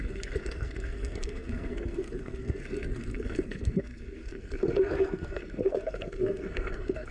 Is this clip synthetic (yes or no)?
yes